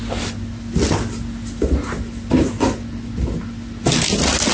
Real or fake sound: real